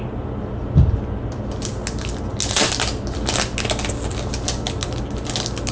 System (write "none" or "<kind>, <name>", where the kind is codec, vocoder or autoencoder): none